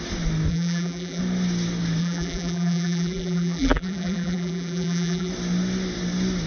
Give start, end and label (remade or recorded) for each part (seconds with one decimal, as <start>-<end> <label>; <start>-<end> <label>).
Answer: 0.0-0.5 recorded; 0.5-1.2 remade; 1.2-2.0 recorded; 2.0-5.3 remade; 5.3-6.5 recorded